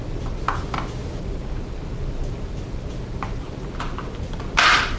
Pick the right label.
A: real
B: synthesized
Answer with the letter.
A